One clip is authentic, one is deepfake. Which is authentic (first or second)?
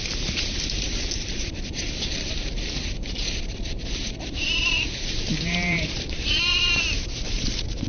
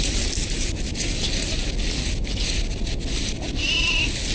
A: second